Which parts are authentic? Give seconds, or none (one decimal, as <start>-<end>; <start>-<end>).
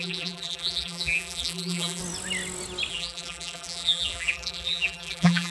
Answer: 2.0-2.9